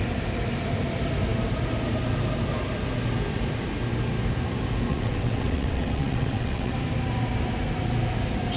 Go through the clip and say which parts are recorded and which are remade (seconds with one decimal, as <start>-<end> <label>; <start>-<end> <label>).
0.0-4.9 recorded; 4.9-6.7 remade; 6.7-8.6 recorded